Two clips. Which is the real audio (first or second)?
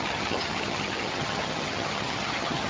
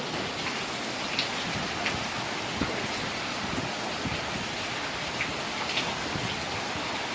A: second